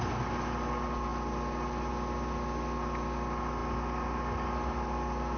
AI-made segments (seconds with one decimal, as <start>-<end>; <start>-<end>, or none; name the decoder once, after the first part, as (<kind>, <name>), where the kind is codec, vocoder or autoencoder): none